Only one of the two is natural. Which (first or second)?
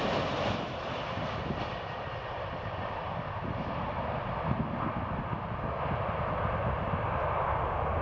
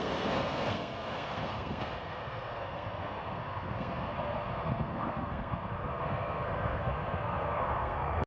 first